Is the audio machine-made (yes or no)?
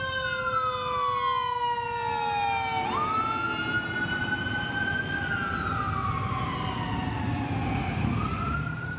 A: no